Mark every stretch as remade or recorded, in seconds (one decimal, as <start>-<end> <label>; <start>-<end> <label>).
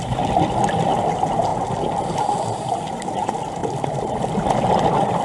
0.0-3.6 recorded; 3.6-4.7 remade; 4.7-5.2 recorded